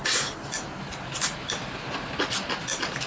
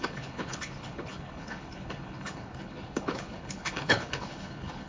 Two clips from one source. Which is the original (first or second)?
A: first